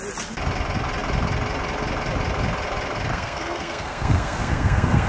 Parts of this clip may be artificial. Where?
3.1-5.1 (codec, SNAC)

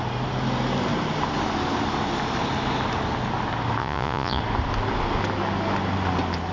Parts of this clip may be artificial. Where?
3.8-4.4 (vocoder, Vocos)

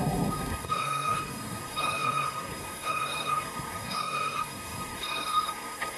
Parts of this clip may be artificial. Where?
0.0-6.0 (codec, SNAC)

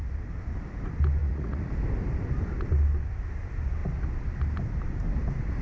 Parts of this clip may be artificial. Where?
1.2-1.7 (vocoder, Vocos)